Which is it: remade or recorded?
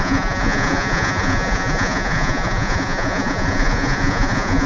remade